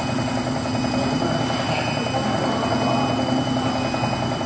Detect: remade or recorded recorded